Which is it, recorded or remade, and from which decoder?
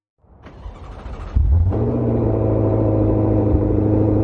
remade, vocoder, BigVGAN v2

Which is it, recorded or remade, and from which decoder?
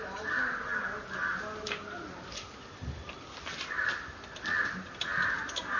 recorded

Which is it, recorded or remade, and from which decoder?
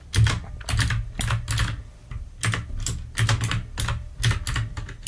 recorded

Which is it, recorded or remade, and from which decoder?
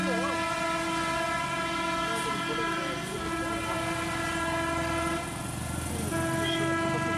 recorded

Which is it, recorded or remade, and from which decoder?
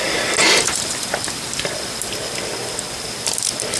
remade, vocoder, BigVGAN v2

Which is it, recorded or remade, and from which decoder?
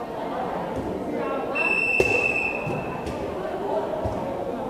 recorded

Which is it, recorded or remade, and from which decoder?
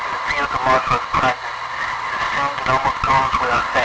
recorded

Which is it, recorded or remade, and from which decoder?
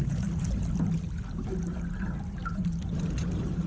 recorded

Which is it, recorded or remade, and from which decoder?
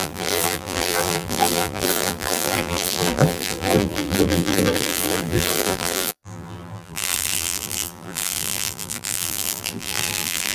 remade, vocoder, BigVGAN v2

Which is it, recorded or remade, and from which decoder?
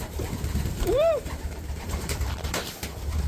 remade, vocoder, BigVGAN v2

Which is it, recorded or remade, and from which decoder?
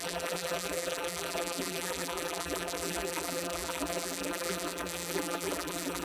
remade, vocoder, BigVGAN v2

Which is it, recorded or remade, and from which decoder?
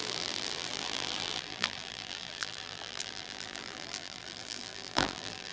remade, vocoder, BigVGAN v2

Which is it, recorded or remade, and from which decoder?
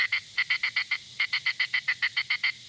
recorded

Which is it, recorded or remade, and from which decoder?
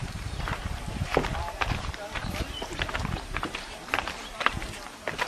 remade, vocoder, BigVGAN v2